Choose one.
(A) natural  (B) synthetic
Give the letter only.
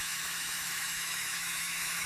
B